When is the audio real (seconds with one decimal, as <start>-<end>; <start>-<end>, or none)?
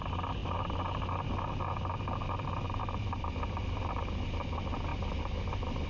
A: 0.0-5.9